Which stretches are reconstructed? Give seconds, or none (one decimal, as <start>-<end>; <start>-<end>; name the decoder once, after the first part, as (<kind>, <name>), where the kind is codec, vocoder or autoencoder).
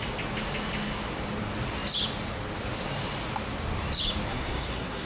4.3-5.1 (codec, SNAC)